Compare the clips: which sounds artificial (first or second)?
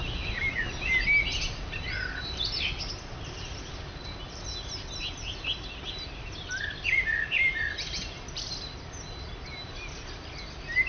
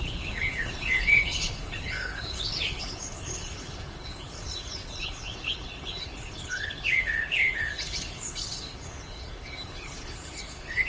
second